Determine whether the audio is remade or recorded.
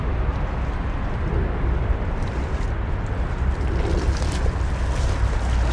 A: recorded